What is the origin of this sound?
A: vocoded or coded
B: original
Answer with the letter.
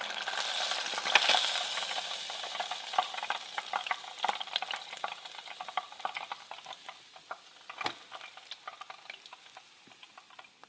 B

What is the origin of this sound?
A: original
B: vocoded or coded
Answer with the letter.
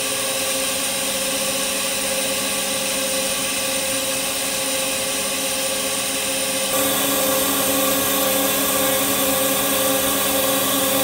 A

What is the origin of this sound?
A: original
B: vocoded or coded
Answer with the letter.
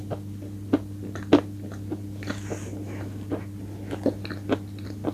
A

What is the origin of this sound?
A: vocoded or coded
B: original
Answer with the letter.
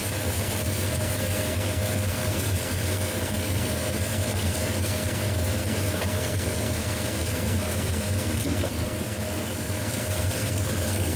A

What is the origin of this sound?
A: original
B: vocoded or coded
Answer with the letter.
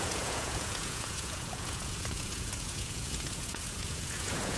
B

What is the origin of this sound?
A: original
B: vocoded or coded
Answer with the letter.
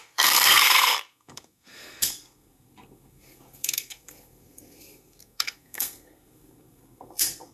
B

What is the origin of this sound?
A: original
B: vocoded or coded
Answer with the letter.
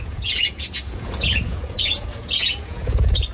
B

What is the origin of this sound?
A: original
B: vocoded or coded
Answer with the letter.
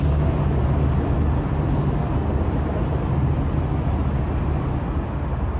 A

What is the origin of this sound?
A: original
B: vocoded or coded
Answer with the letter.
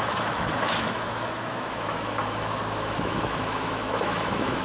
B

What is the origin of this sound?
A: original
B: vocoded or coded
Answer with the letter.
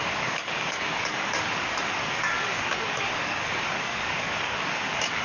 B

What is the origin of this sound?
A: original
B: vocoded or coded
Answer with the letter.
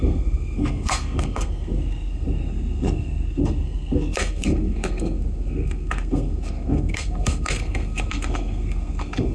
B